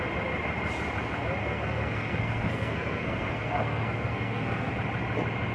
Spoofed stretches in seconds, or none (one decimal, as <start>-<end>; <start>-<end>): 1.4-4.7